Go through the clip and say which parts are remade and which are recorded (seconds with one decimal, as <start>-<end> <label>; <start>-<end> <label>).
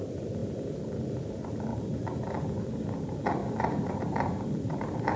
0.0-1.7 remade; 1.7-2.6 recorded; 2.6-3.4 remade; 3.4-3.9 recorded; 3.9-5.2 remade